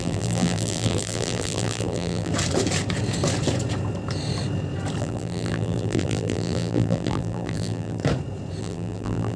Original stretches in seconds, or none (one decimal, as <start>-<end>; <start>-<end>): 2.3-5.0; 8.0-8.6